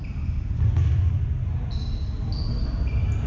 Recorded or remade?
recorded